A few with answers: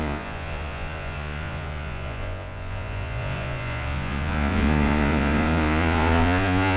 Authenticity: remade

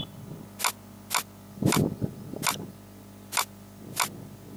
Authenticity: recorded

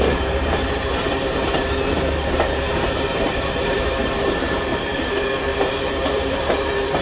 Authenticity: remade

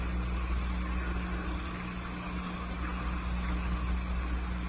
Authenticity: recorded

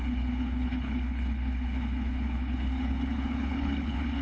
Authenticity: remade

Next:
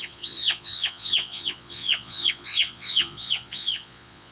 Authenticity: remade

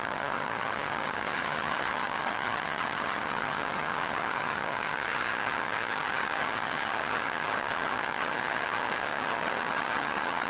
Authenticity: remade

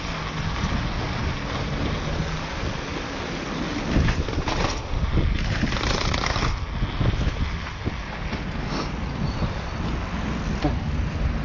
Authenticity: recorded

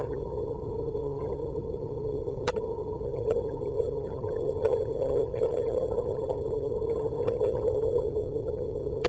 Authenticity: remade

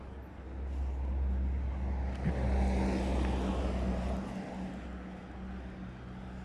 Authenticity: recorded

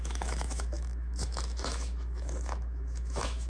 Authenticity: remade